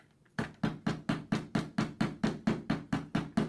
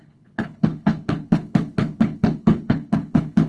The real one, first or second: first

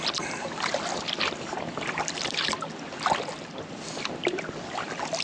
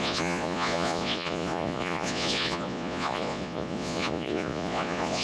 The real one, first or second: first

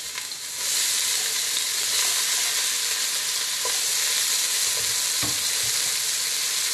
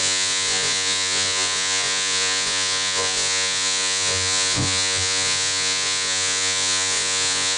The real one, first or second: first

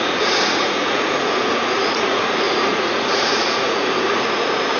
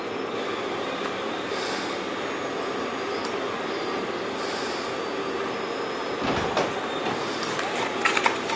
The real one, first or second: second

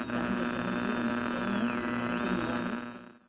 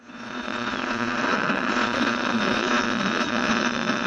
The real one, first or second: first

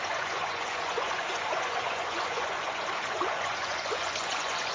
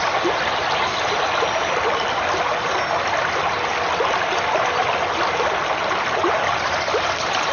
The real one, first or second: second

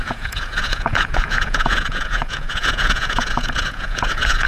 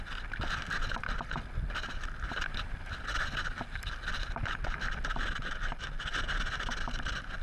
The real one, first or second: second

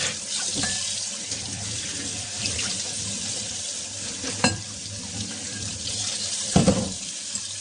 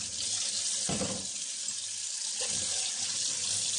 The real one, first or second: second